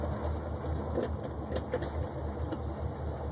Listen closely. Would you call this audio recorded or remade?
recorded